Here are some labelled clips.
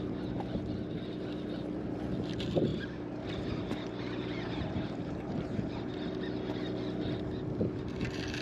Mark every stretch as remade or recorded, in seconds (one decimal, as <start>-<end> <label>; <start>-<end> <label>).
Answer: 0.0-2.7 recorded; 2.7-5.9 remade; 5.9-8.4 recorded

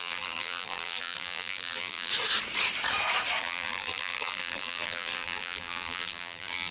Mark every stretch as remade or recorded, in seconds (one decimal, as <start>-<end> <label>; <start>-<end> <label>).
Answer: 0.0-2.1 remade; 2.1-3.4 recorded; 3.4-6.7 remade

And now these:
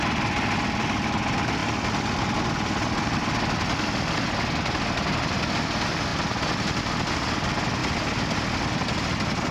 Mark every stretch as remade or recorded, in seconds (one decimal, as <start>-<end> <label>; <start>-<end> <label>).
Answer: 0.0-9.5 recorded

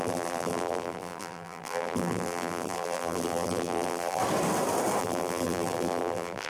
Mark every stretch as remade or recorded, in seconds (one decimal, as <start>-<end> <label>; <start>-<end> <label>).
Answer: 0.0-4.2 remade; 4.2-5.0 recorded; 5.0-6.5 remade